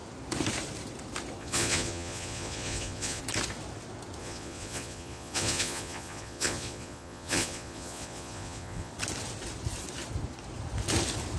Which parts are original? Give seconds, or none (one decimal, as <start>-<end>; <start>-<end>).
0.0-1.4; 3.2-4.2; 8.9-11.4